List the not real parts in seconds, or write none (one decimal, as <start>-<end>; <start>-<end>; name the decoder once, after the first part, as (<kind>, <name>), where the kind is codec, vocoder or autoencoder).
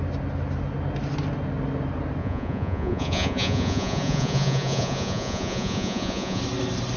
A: 2.2-6.4 (vocoder, Vocos)